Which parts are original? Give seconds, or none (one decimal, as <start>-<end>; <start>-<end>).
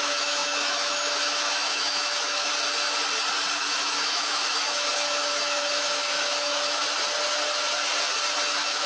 2.5-3.6; 6.8-8.5